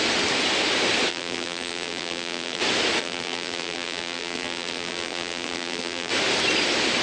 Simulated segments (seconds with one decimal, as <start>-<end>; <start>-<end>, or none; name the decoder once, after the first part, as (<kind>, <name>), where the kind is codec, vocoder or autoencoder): 1.1-2.6 (vocoder, BigVGAN v2); 3.0-6.1